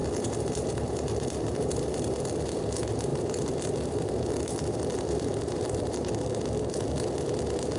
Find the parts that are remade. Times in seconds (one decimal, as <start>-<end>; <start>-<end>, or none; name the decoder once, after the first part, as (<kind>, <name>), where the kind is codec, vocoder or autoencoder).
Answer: 0.0-2.6 (vocoder, BigVGAN v2); 3.1-6.1